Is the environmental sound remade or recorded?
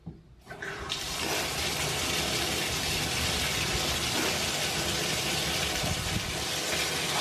recorded